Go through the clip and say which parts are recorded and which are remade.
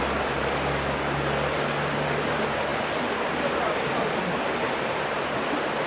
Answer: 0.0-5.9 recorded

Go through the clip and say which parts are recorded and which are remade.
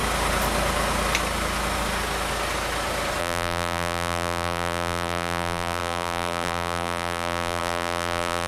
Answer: 0.0-3.2 recorded; 3.2-8.5 remade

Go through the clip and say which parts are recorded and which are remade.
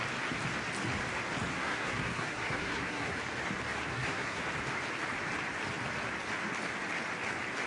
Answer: 0.0-1.5 recorded; 1.5-3.2 remade; 3.2-3.9 recorded; 3.9-4.4 remade; 4.4-7.7 recorded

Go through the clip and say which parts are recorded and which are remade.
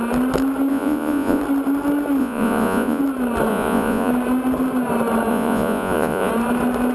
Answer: 0.0-0.7 recorded; 0.7-1.4 remade; 1.4-2.2 recorded; 2.2-3.0 remade; 3.0-3.5 recorded; 3.5-4.1 remade; 4.1-5.3 recorded; 5.3-6.3 remade; 6.3-6.9 recorded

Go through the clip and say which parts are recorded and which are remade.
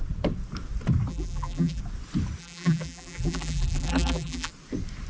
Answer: 0.0-1.1 recorded; 1.1-1.8 remade; 1.8-2.4 recorded; 2.4-4.5 remade; 4.5-5.1 recorded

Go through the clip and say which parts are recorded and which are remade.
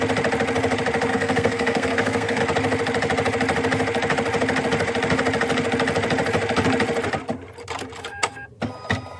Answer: 0.0-1.1 recorded; 1.1-2.4 remade; 2.4-9.2 recorded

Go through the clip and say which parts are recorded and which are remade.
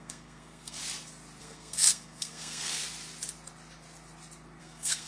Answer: 0.0-0.8 remade; 0.8-1.4 recorded; 1.4-2.8 remade; 2.8-4.6 recorded; 4.6-5.1 remade